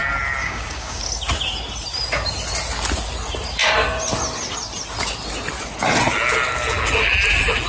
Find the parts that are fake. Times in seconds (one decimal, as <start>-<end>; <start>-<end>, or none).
0.4-1.0